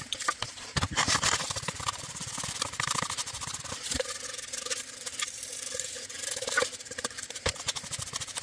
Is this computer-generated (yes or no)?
yes